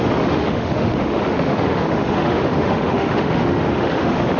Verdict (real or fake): fake